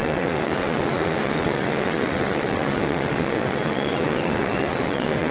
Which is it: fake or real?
fake